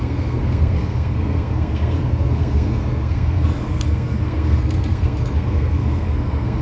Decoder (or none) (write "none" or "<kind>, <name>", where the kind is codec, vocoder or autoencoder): codec, SNAC